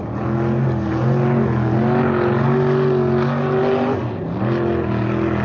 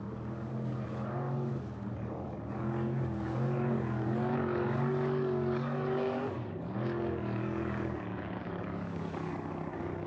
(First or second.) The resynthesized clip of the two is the second